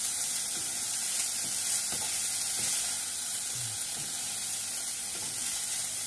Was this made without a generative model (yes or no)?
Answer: yes